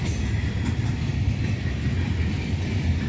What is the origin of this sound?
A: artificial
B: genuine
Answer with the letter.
B